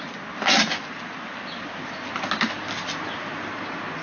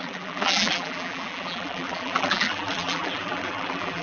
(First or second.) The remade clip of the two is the second